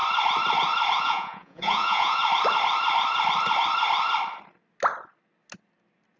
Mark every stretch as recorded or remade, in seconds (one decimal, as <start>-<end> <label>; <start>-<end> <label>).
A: 0.0-1.0 recorded; 1.0-2.2 remade; 2.2-6.2 recorded